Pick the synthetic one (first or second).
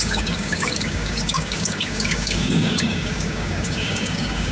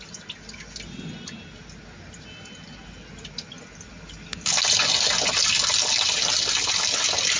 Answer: first